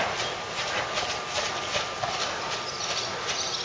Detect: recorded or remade recorded